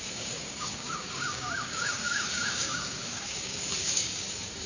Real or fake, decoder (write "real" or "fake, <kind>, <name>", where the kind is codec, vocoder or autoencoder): fake, codec, DAC